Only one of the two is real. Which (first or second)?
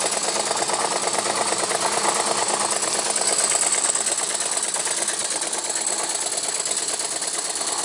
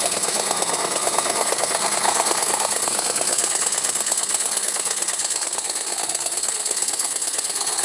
first